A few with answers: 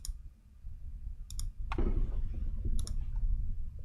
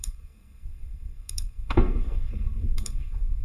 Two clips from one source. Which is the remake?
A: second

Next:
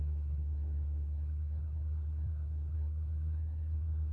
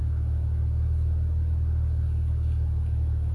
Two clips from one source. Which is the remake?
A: first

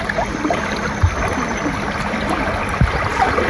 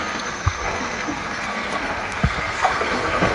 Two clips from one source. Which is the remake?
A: second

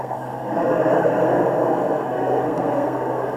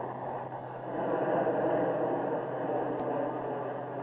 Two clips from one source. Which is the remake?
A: first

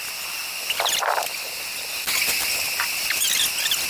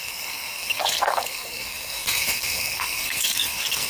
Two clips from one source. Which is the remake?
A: second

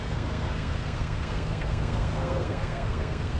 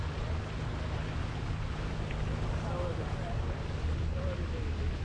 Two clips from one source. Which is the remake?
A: first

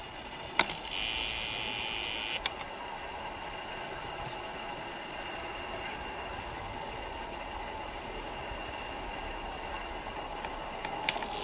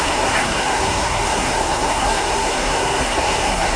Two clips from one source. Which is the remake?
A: second